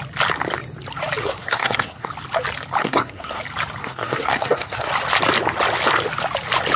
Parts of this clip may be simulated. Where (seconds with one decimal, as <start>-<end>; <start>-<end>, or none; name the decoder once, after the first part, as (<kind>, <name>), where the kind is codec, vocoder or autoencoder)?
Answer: 1.2-2.1 (codec, SNAC); 2.8-3.4; 3.8-4.9